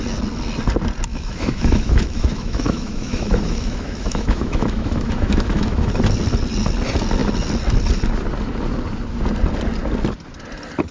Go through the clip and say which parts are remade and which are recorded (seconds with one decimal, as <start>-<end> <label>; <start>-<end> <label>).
0.0-1.1 recorded; 1.1-5.9 remade; 5.9-10.9 recorded